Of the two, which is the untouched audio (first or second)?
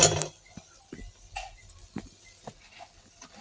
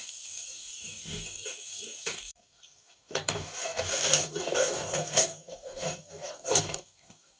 first